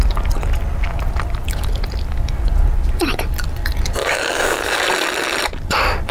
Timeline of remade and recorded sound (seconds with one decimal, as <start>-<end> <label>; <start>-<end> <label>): 0.0-4.0 recorded; 4.0-4.8 remade; 4.8-6.1 recorded